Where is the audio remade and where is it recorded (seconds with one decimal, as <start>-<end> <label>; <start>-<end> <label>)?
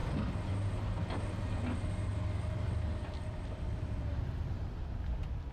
0.0-2.1 recorded; 2.1-4.8 remade; 4.8-5.5 recorded